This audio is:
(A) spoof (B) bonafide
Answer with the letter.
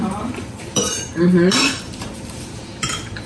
A